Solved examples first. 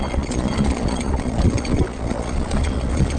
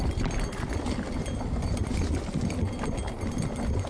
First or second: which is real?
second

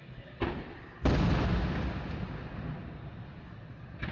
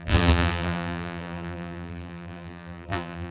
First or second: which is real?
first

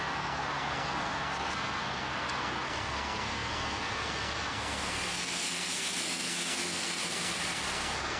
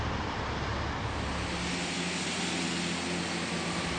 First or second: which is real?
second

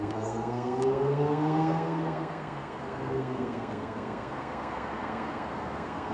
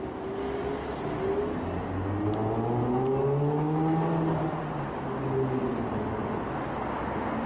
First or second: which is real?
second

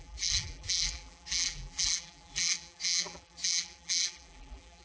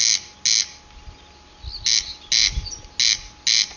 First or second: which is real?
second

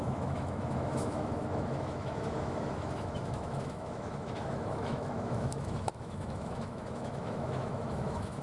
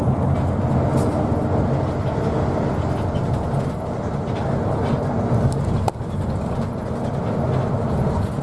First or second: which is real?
second